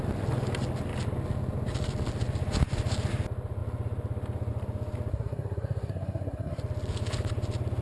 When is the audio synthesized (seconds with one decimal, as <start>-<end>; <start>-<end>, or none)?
5.1-6.6